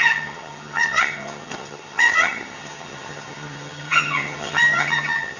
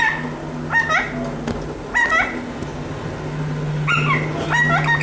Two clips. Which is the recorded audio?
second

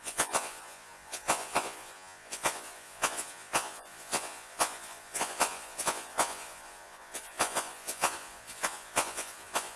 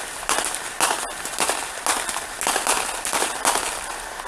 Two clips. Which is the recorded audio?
second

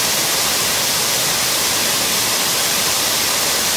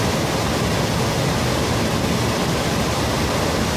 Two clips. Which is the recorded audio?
second